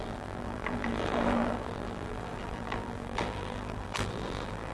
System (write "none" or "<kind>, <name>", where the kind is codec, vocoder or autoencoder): vocoder, BigVGAN v2